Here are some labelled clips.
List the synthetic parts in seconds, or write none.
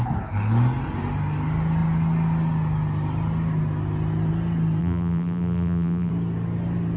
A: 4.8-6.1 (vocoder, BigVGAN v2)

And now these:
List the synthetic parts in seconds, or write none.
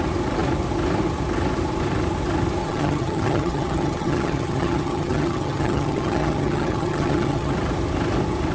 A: 2.6-7.5 (vocoder, HiFi-GAN)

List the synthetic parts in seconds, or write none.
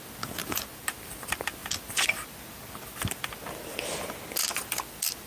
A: none